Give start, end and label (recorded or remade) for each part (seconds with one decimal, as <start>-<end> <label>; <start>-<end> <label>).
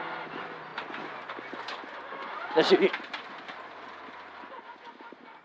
0.0-5.4 recorded